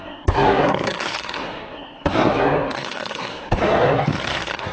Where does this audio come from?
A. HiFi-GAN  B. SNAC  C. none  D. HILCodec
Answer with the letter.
B